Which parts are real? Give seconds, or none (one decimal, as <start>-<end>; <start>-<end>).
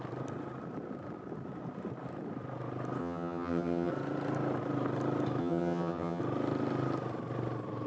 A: 0.0-3.0; 3.9-5.4; 6.2-7.9